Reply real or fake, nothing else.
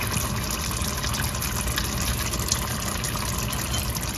real